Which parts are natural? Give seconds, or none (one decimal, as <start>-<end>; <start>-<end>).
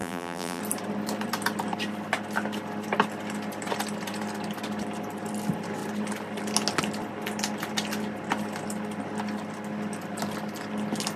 0.6-11.2